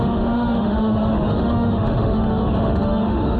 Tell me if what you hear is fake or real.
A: fake